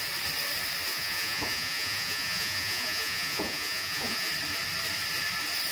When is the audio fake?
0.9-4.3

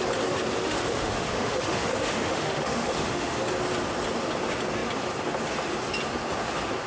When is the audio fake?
0.6-3.4

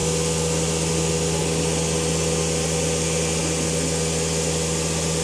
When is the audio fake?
none